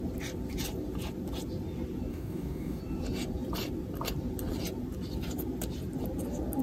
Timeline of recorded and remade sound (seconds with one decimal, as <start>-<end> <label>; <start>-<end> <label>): 0.0-2.1 recorded; 2.1-2.8 remade; 2.8-6.6 recorded